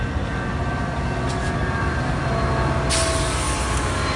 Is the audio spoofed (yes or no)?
no